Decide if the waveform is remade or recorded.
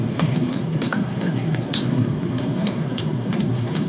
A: remade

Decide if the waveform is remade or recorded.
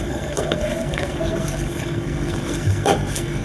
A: remade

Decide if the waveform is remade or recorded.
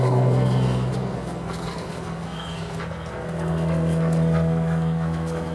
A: remade